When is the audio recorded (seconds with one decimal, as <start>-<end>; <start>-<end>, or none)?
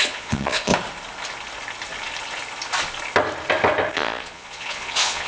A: 0.7-3.9